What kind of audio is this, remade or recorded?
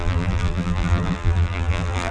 remade